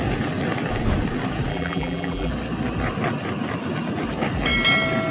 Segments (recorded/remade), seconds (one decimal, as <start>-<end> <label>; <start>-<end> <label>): 0.0-1.5 recorded; 1.5-2.3 remade; 2.3-5.1 recorded